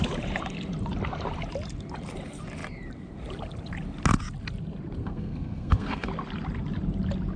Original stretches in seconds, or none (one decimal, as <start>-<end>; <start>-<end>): 0.0-5.0; 6.1-7.4